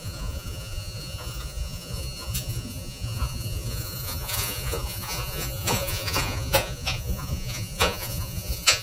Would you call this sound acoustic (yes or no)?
no